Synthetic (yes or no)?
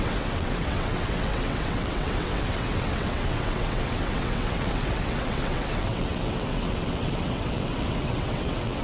yes